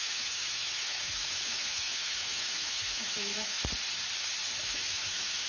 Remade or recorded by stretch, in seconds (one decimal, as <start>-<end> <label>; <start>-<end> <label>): 0.0-3.6 remade; 3.6-4.6 recorded; 4.6-5.5 remade